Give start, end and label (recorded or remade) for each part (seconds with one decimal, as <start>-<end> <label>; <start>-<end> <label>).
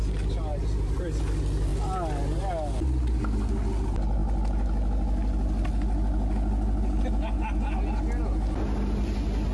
0.0-0.5 recorded; 0.5-1.2 remade; 1.2-9.5 recorded